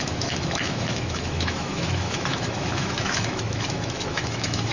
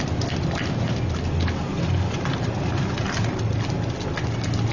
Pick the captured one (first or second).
second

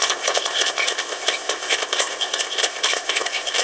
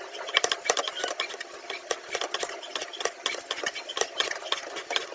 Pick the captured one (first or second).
second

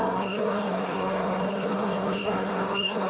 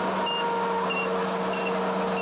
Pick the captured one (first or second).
second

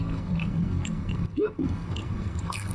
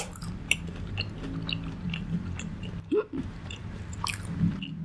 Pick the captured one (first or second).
second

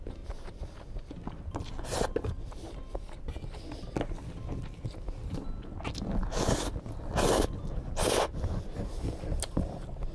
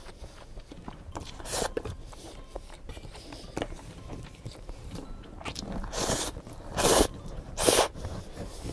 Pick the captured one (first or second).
first